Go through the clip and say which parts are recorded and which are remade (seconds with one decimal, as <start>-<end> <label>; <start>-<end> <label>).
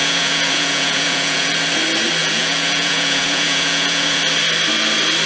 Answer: 0.0-1.5 remade; 1.5-2.2 recorded; 2.2-4.2 remade; 4.2-5.3 recorded